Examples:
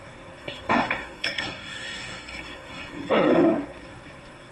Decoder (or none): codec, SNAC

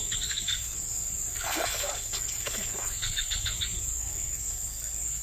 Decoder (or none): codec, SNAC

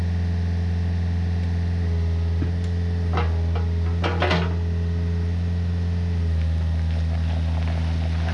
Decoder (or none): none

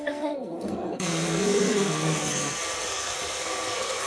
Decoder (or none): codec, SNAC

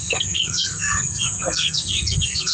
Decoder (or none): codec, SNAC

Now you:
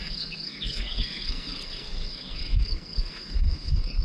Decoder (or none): codec, SNAC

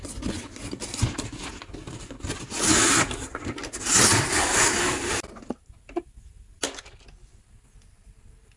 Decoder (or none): none